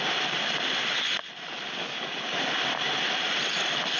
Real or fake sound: real